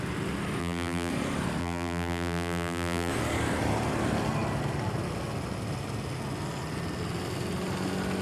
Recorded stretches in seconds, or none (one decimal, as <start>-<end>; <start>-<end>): 0.0-0.6; 1.1-1.6; 3.1-8.2